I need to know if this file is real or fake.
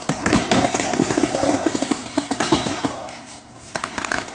fake